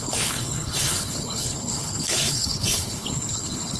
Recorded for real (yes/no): no